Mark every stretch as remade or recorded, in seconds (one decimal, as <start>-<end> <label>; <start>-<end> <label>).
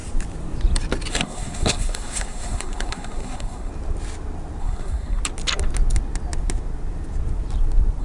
0.0-1.1 recorded; 1.1-3.7 remade; 3.7-4.6 recorded; 4.6-5.2 remade; 5.2-8.0 recorded